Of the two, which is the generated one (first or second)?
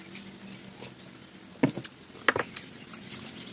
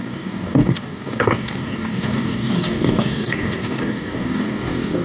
second